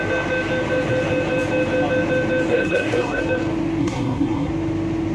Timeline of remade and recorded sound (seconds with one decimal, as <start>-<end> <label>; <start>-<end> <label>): 0.0-2.5 recorded; 2.5-3.2 remade; 3.2-3.8 recorded; 3.8-4.5 remade; 4.5-5.1 recorded